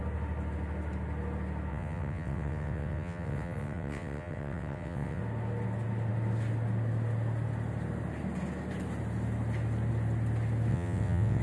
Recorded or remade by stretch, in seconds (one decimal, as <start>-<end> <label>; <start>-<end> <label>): 0.0-1.7 recorded; 1.7-5.2 remade; 5.2-10.7 recorded; 10.7-11.4 remade